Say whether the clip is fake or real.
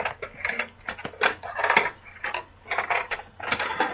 real